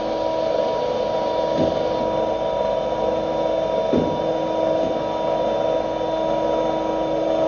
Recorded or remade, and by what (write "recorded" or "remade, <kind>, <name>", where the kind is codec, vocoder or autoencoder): recorded